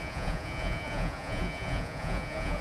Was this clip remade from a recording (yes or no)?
yes